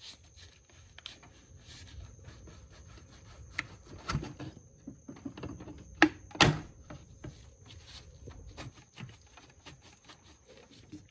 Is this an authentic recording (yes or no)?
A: yes